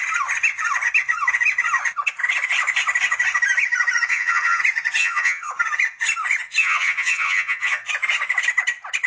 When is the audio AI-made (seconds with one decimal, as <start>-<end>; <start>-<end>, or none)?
4.1-4.6; 5.0-5.5; 6.6-7.9